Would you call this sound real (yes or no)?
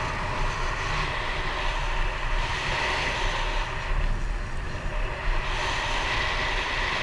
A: yes